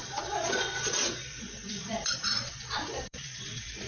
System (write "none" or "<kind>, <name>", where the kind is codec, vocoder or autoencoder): vocoder, Vocos